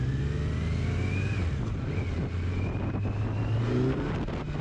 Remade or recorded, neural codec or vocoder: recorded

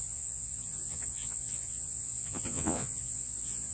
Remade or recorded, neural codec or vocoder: remade, vocoder, Vocos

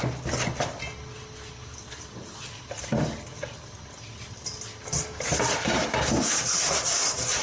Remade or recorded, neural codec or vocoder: recorded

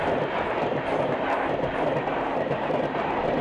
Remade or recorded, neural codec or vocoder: recorded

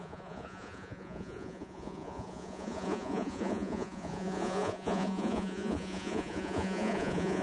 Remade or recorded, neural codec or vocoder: remade, vocoder, Vocos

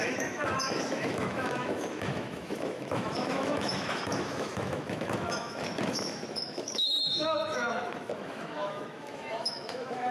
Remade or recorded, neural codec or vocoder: remade, autoencoder, DAC-VAE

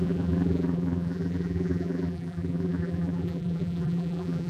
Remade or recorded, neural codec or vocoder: remade, vocoder, BigVGAN v2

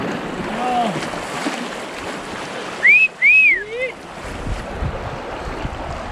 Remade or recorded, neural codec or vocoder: recorded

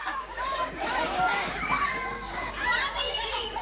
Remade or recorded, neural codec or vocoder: remade, codec, DAC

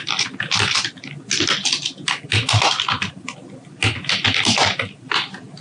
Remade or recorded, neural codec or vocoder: recorded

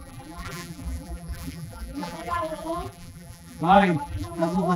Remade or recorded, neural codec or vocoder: remade, vocoder, BigVGAN v2